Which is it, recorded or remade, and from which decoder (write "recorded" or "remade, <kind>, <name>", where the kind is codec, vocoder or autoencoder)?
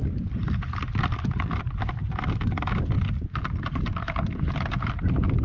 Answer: recorded